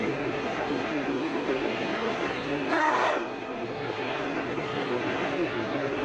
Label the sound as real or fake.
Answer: fake